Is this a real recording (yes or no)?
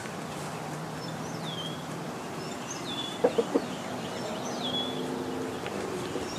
yes